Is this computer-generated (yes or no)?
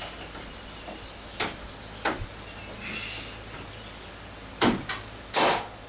no